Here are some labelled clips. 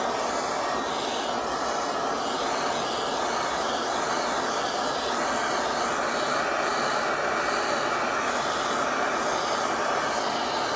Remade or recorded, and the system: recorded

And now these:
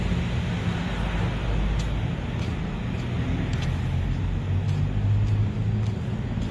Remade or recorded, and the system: recorded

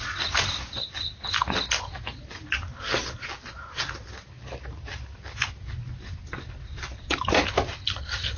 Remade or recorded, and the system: recorded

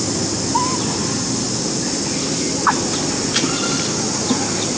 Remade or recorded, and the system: recorded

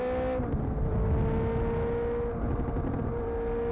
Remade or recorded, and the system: recorded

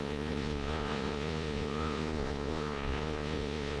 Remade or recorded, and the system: remade, vocoder, Vocos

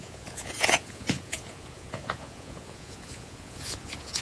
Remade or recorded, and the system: remade, vocoder, Vocos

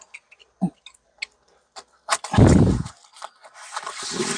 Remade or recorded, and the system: recorded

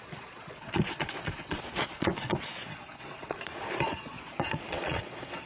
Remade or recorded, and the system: remade, vocoder, Vocos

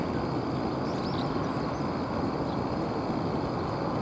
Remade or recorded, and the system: recorded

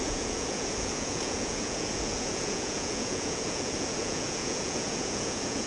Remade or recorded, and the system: remade, vocoder, Vocos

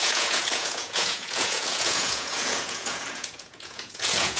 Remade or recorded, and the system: remade, vocoder, Vocos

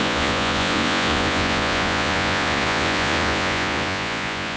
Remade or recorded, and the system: remade, vocoder, Vocos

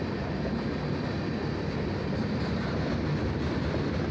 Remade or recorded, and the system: recorded